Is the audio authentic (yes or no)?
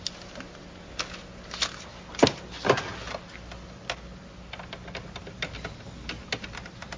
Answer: yes